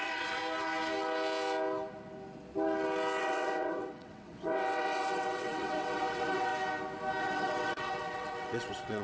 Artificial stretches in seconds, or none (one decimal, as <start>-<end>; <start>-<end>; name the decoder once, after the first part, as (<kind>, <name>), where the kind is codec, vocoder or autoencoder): 0.0-0.4 (vocoder, WaveNeXt); 3.2-6.5; 7.2-9.0